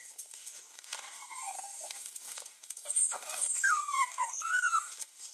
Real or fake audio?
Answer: fake